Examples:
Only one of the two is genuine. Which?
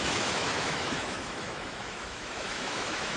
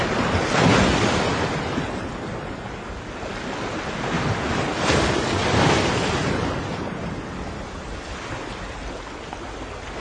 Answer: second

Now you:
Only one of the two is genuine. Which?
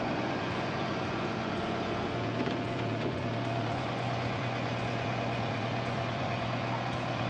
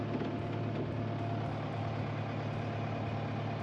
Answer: second